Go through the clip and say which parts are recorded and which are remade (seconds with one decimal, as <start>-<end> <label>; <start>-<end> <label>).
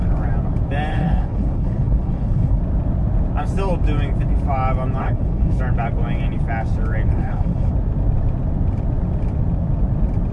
0.0-0.9 recorded; 0.9-2.6 remade; 2.6-5.0 recorded; 5.0-5.6 remade; 5.6-7.1 recorded; 7.1-7.7 remade; 7.7-10.3 recorded